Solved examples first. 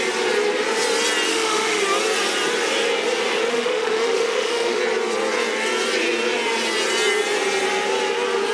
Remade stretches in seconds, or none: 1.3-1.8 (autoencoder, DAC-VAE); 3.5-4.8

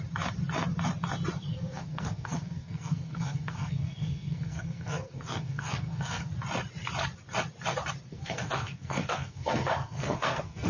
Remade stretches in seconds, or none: 1.5-6.3 (codec, SNAC); 8.1-10.7

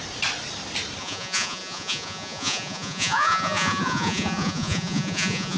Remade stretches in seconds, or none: 1.0-5.6 (vocoder, Vocos)

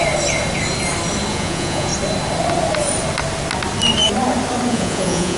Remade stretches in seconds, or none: 1.3-1.9 (vocoder, Vocos); 4.7-5.4

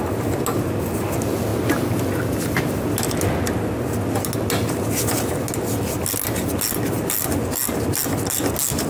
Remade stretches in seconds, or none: none

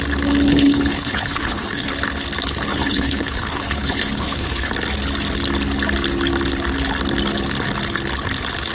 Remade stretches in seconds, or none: 0.5-1.9 (codec, HILCodec); 2.7-4.7

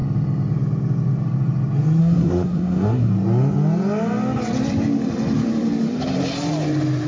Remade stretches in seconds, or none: 2.0-3.1 (codec, SNAC)